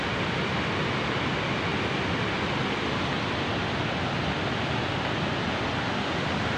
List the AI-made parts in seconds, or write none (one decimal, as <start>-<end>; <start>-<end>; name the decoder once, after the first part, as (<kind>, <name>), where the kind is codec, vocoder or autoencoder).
none